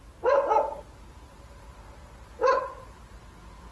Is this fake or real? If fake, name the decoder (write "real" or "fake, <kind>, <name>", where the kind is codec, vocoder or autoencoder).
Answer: real